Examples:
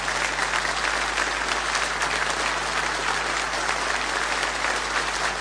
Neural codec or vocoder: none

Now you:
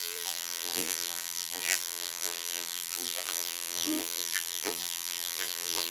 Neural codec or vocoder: vocoder, BigVGAN v2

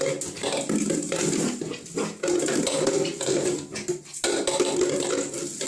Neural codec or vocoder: none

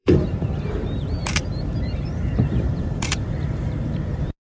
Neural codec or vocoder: vocoder, BigVGAN v2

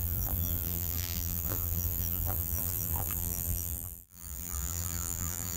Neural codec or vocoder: vocoder, BigVGAN v2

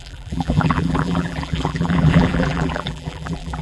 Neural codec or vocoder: vocoder, BigVGAN v2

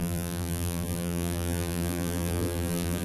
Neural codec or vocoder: vocoder, BigVGAN v2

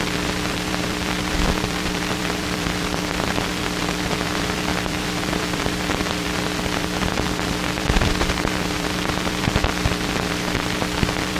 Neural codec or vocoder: vocoder, BigVGAN v2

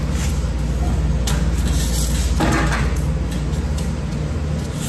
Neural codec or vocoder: none